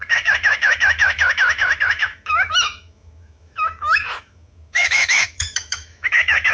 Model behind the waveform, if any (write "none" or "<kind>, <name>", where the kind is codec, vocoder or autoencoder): autoencoder, DAC-VAE